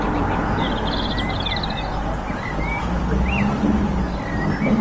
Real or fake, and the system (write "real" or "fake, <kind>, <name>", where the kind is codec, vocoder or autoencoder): real